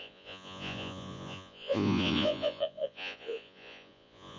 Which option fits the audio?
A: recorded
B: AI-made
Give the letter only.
B